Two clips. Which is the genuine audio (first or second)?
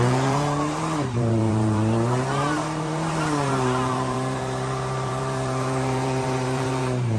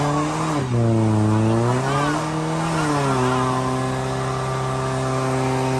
second